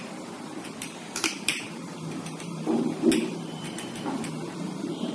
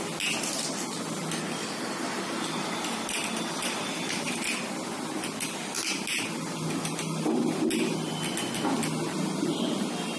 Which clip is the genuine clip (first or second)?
second